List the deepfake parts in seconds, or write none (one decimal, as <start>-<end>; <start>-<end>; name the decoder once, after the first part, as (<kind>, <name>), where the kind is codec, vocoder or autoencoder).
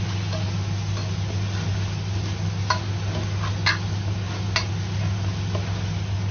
none